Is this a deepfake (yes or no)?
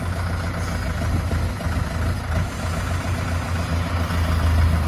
no